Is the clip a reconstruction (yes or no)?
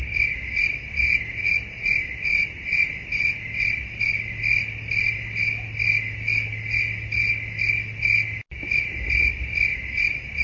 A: no